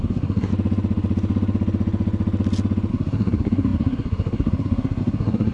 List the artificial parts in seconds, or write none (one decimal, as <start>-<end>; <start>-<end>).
0.0-0.5; 2.9-5.5